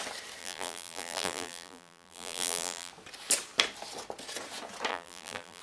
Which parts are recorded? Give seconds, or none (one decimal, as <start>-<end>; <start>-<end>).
0.0-0.4; 2.9-4.9